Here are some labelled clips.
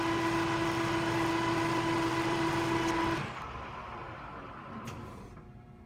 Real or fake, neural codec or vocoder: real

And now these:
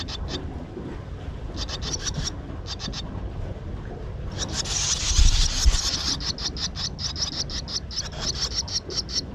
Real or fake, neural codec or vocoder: real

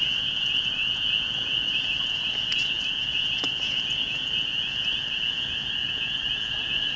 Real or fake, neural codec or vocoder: fake, vocoder, Vocos